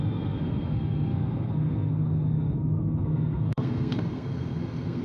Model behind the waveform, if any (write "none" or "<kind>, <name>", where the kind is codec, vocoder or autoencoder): codec, SNAC